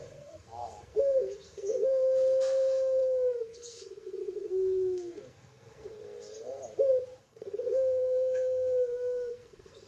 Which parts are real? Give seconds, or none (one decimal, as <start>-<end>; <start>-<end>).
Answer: 6.6-7.2